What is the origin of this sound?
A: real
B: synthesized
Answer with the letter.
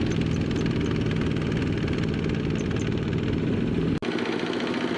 A